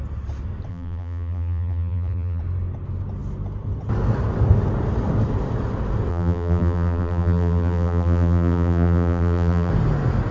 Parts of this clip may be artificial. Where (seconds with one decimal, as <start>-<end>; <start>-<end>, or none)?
0.7-2.4; 6.1-9.7

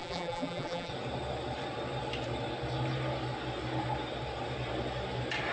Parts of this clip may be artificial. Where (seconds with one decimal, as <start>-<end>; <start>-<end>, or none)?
0.0-0.9

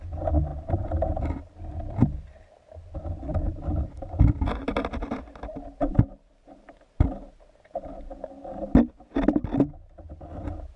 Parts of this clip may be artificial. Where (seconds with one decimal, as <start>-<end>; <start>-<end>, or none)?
0.5-1.5; 3.3-8.3

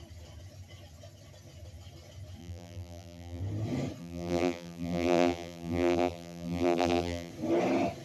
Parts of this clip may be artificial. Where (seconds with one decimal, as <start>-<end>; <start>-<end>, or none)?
2.4-3.4; 4.0-7.3